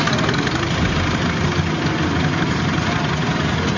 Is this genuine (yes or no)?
yes